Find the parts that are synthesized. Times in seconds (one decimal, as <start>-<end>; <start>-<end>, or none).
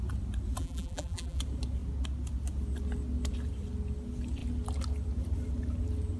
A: 0.6-1.4